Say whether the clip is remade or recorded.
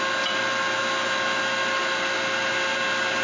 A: recorded